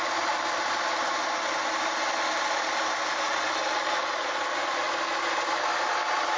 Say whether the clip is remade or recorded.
recorded